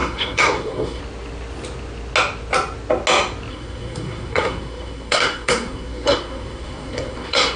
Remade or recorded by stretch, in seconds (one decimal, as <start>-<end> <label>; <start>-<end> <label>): 0.0-1.0 remade; 1.0-3.5 recorded; 3.5-7.6 remade